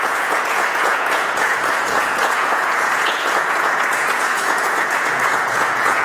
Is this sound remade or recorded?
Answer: remade